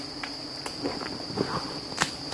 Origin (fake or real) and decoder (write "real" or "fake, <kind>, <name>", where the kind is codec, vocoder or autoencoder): real